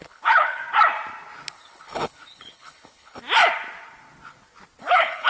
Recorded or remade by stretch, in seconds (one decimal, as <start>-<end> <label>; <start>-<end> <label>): 0.0-0.6 remade; 0.6-1.5 recorded; 1.5-3.2 remade; 3.2-4.8 recorded; 4.8-5.3 remade